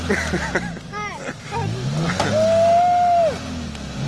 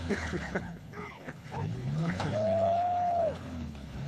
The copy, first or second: second